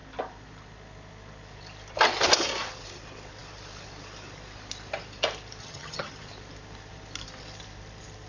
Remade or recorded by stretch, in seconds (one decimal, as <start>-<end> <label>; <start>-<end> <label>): 0.0-5.6 recorded; 5.6-6.1 remade; 6.1-8.3 recorded